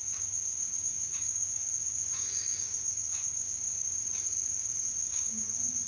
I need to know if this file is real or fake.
fake